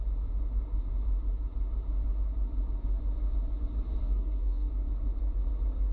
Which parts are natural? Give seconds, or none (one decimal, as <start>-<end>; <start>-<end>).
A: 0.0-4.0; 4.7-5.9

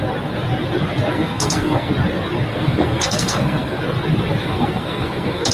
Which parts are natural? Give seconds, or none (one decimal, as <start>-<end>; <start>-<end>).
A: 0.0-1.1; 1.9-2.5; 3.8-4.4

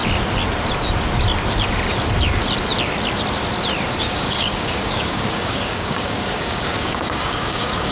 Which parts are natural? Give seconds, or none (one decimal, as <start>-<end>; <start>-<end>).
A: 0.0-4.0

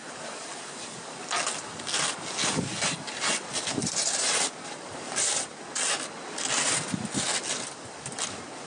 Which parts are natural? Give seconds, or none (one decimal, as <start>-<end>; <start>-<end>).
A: 0.0-3.8; 5.5-8.7

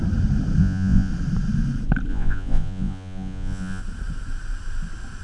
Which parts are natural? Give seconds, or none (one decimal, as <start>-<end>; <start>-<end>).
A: 0.0-0.6; 1.1-2.1; 3.8-5.2

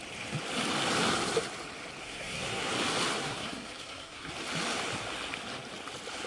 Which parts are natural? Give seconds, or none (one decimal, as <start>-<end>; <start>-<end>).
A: 0.0-2.0; 2.7-3.2; 4.3-6.3